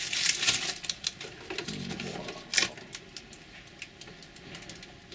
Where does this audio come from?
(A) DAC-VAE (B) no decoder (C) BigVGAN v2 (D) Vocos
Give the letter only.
B